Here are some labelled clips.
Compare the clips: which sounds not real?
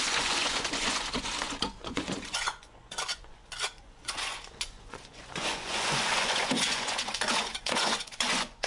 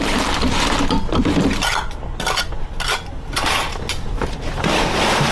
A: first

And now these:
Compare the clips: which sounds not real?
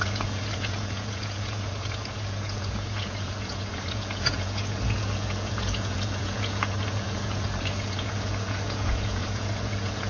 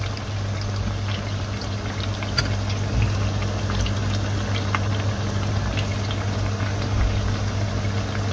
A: first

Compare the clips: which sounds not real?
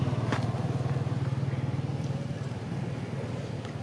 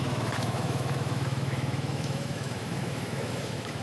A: second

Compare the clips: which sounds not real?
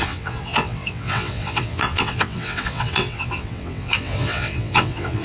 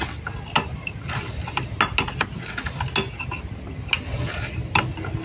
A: first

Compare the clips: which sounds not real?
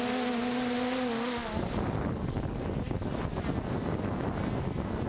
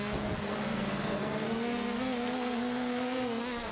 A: second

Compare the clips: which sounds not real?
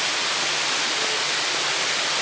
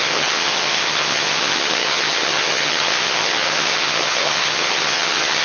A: second